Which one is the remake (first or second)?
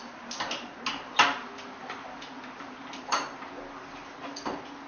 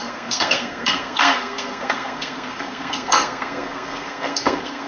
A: second